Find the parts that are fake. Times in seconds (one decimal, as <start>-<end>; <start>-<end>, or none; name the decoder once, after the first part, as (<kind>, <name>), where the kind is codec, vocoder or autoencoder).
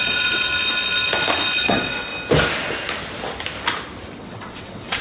0.0-0.5 (vocoder, WaveNeXt); 1.6-2.1; 4.2-5.0